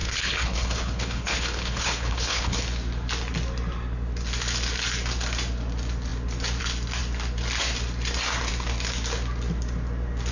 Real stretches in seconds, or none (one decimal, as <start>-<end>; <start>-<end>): 2.6-10.3